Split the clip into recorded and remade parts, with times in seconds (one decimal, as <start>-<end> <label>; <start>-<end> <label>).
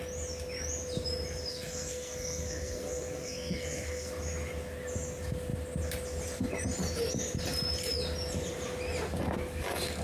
0.0-1.5 recorded; 1.5-4.1 remade; 4.1-10.0 recorded